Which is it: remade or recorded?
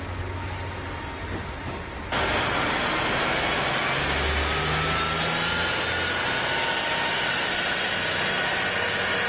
recorded